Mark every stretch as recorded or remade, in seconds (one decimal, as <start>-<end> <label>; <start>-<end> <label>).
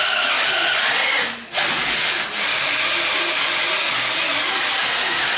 0.0-5.4 recorded